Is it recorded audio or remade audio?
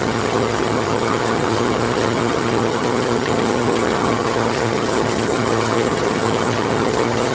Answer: remade